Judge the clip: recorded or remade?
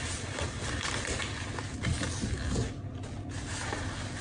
recorded